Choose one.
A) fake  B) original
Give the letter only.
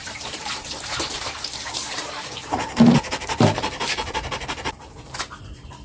A